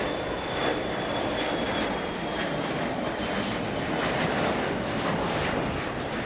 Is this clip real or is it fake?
real